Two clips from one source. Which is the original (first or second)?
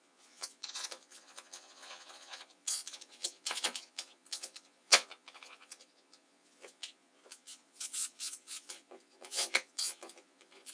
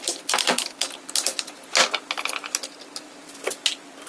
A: second